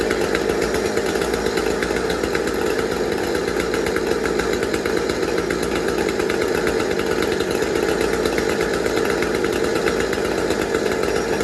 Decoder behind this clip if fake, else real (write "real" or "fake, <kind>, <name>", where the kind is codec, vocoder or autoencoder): real